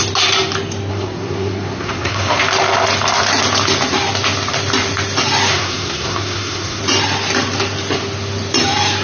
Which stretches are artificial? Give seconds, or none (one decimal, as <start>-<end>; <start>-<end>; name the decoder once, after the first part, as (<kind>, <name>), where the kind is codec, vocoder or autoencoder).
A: 0.9-2.4 (codec, SNAC); 5.5-6.8